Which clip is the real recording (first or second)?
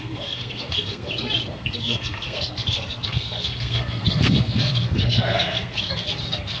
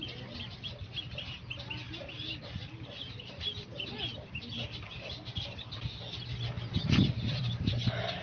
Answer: second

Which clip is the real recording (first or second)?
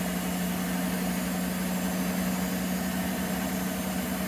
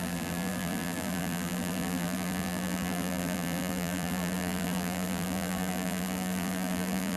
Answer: first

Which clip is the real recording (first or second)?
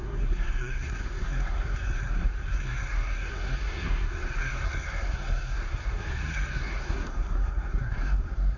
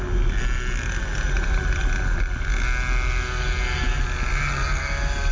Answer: second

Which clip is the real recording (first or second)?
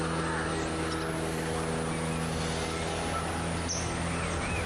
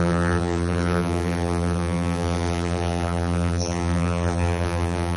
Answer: first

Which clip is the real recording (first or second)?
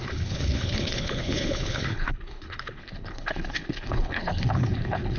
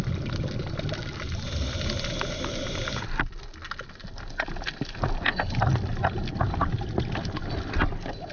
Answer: second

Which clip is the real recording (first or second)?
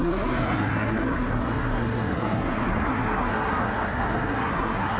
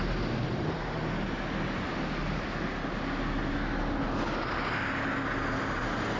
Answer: second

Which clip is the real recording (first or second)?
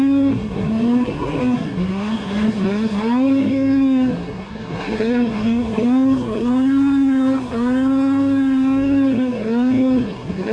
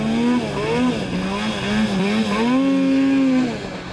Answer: second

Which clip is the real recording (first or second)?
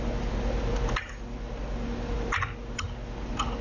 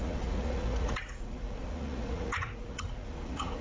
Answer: first